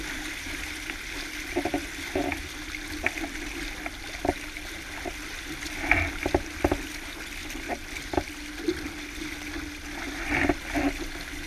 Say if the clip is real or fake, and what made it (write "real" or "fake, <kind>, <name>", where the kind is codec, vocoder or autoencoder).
real